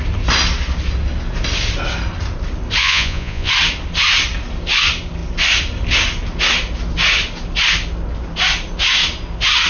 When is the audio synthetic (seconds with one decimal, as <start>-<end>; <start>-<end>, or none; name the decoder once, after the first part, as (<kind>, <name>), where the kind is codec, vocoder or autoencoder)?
2.8-3.5 (vocoder, Vocos)